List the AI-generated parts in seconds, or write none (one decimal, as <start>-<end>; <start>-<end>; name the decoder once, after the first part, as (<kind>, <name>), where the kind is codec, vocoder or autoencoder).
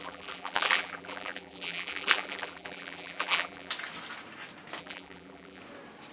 0.0-3.7 (vocoder, BigVGAN v2); 4.8-5.6